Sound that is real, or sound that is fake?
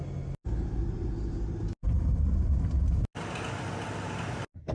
real